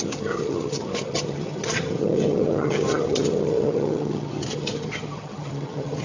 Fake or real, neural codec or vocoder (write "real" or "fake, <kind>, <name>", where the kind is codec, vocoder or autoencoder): fake, vocoder, HiFi-GAN